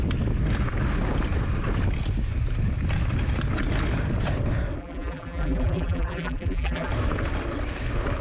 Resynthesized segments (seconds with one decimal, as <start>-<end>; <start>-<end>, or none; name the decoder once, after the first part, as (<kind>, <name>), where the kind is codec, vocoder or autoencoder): 4.8-6.9 (vocoder, BigVGAN v2)